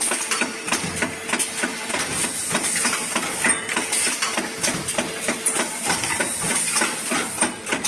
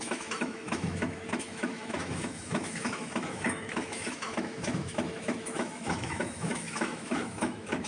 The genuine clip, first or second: first